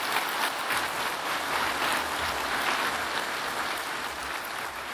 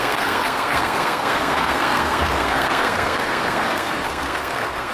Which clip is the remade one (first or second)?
second